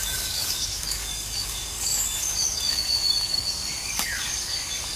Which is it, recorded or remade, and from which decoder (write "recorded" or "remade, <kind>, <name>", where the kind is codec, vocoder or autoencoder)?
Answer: remade, codec, DAC